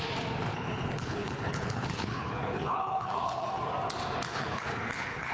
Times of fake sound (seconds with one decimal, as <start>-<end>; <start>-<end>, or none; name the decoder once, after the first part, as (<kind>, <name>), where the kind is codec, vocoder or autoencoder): 0.5-3.6 (codec, HILCodec); 4.3-5.3